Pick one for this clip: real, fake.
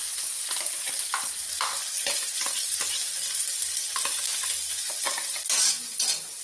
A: real